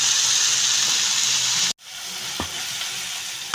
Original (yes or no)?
yes